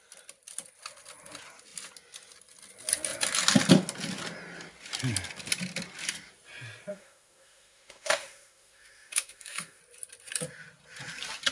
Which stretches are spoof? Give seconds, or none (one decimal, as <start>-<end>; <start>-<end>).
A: 6.9-9.8